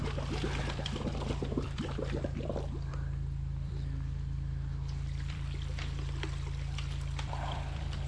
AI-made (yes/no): yes